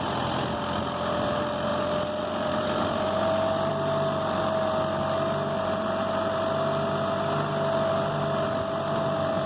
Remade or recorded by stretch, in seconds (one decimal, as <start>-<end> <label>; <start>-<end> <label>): 0.0-1.7 recorded; 1.7-4.4 remade; 4.4-9.5 recorded